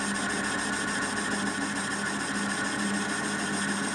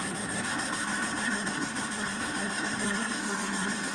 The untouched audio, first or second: first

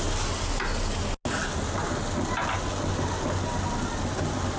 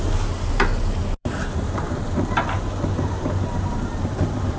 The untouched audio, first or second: first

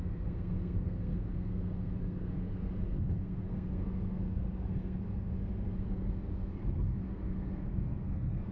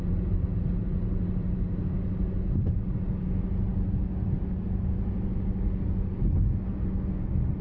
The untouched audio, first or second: second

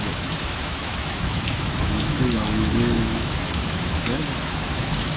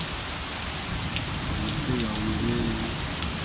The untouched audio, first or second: second